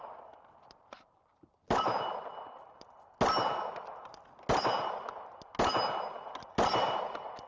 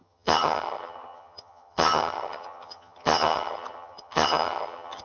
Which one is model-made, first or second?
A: second